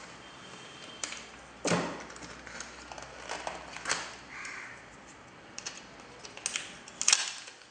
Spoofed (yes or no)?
no